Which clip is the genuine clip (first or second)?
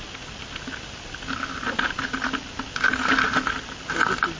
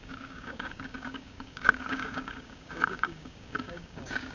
first